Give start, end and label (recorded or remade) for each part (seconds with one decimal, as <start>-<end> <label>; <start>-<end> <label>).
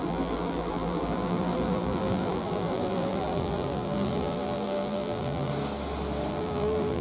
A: 0.0-5.5 remade; 5.5-6.3 recorded; 6.3-7.0 remade